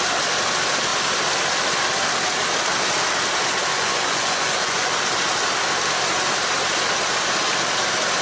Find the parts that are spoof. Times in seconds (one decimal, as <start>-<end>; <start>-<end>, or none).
3.7-4.9